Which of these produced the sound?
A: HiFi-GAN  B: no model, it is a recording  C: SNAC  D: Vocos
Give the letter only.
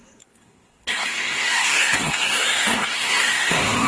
C